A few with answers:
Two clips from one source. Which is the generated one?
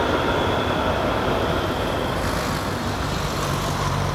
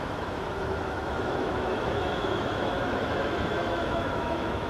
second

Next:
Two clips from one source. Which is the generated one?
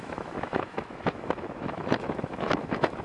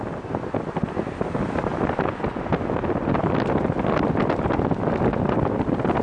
first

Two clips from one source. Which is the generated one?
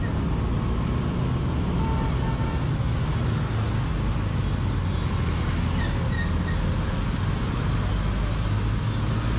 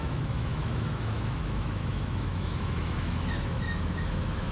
second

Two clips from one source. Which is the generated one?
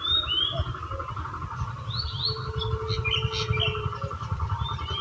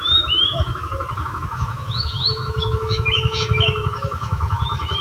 second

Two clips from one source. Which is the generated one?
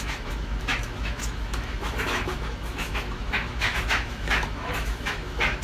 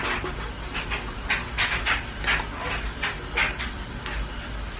first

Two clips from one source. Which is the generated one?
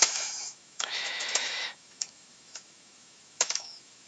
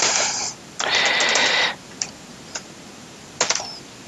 first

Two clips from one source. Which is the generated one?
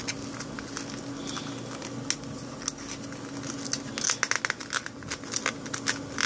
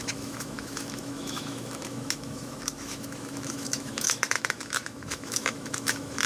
second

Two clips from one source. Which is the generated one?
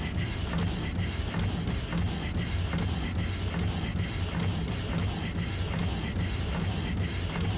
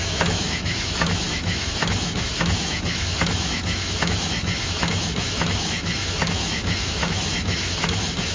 second